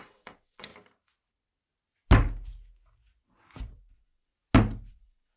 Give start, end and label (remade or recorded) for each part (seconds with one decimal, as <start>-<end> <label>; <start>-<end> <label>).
0.0-0.7 remade; 0.7-3.9 recorded; 3.9-4.3 remade; 4.3-4.9 recorded; 4.9-5.4 remade

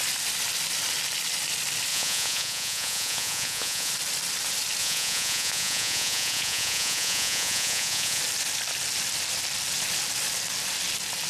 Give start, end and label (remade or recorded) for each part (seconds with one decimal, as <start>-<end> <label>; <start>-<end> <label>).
0.0-1.9 recorded; 1.9-3.9 remade; 3.9-4.8 recorded; 4.8-8.2 remade; 8.2-11.3 recorded

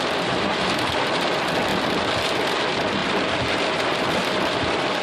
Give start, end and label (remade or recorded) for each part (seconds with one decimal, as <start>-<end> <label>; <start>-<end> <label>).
0.0-5.0 recorded